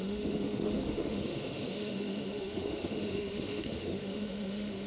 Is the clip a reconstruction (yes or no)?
yes